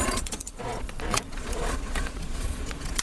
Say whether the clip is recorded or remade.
remade